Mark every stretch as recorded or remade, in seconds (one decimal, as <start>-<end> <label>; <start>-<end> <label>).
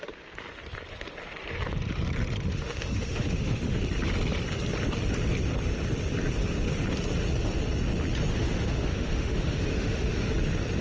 0.0-2.5 recorded; 2.5-3.8 remade; 3.8-8.3 recorded; 8.3-10.3 remade; 10.3-10.8 recorded